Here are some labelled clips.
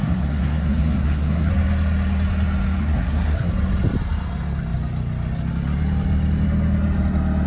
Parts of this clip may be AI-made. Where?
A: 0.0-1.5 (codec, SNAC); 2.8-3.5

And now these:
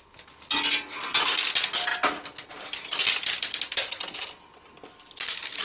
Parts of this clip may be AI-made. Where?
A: none

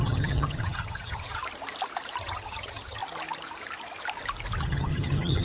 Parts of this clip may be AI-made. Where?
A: 0.0-1.4 (vocoder, HiFi-GAN); 2.2-3.0; 4.6-5.4

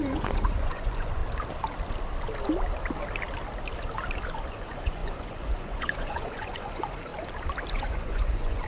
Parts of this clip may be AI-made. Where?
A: 0.0-1.2 (vocoder, Vocos); 4.5-7.1; 7.7-8.7

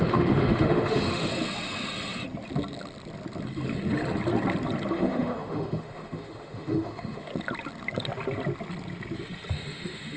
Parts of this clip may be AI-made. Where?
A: 0.0-1.3 (autoencoder, DAC-VAE); 4.9-7.3; 9.5-10.2